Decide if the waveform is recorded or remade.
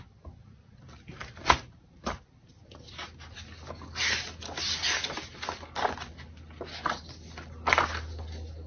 recorded